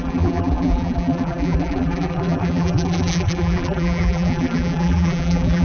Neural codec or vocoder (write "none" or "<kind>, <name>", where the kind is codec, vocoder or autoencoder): vocoder, BigVGAN v2